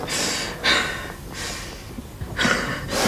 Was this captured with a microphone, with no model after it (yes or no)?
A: yes